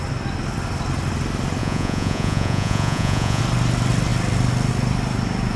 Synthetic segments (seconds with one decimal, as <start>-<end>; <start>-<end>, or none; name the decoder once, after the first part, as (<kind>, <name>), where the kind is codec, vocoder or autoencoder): 1.6-3.4 (vocoder, Vocos)